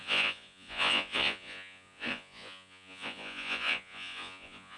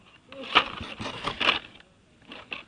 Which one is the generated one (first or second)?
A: first